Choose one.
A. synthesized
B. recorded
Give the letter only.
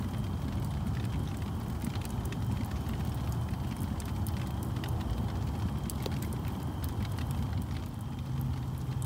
B